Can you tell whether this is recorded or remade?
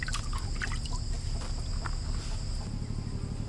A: recorded